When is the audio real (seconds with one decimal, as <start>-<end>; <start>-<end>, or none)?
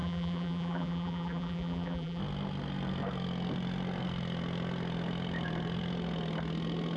2.2-7.0